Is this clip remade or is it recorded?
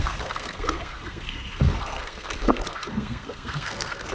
remade